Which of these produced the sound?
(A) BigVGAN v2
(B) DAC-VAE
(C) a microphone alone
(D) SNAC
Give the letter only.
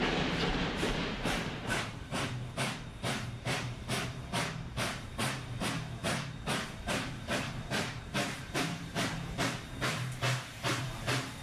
A